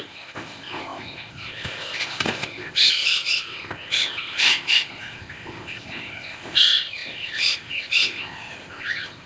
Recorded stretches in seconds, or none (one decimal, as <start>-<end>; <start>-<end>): none